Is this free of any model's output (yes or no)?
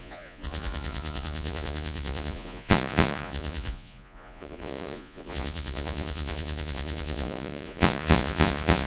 no